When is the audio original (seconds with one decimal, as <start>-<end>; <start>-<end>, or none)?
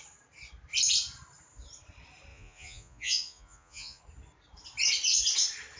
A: 0.0-2.3; 4.0-5.8